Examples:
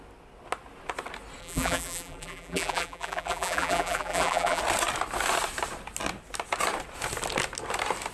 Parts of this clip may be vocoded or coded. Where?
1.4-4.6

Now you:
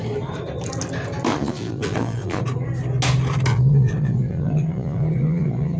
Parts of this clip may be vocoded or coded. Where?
1.3-2.4; 3.5-5.8